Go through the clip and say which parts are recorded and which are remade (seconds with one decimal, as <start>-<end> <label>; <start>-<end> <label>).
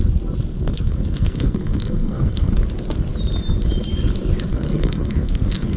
0.0-0.5 recorded; 0.5-2.5 remade; 2.5-4.5 recorded; 4.5-5.8 remade